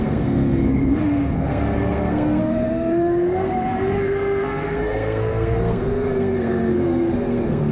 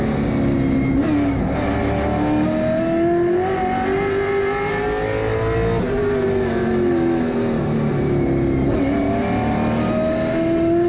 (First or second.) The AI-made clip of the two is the first